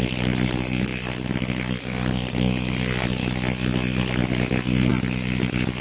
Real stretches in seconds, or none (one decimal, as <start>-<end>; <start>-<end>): 0.0-5.8